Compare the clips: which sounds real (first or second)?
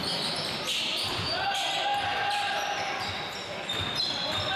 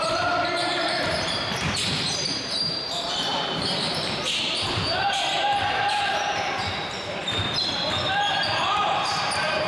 first